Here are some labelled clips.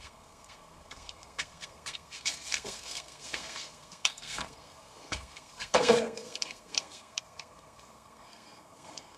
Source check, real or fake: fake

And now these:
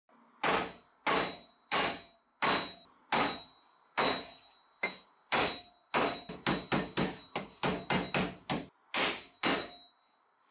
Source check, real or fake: real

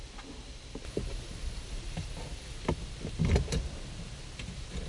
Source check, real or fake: real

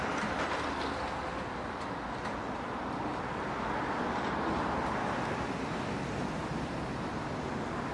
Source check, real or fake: real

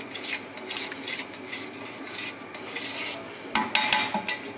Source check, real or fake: real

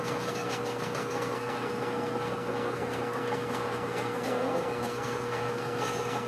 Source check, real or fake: fake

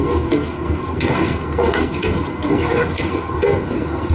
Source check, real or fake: fake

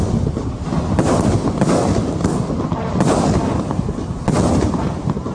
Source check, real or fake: real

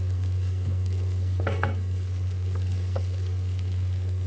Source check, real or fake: fake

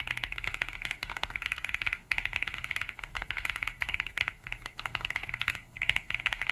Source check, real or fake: fake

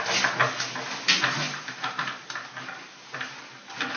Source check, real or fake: real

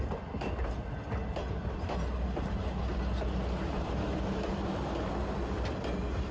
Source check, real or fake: real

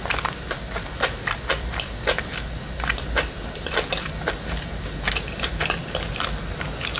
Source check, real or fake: real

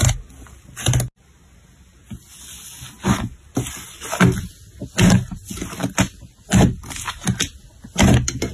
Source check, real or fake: real